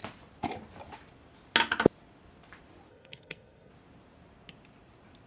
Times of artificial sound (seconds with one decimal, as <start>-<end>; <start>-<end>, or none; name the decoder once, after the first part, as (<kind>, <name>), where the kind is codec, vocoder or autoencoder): 2.9-3.7 (codec, SNAC)